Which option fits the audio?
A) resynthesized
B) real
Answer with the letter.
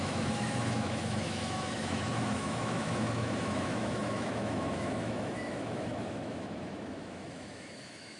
A